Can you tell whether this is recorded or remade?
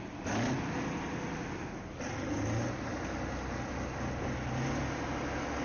recorded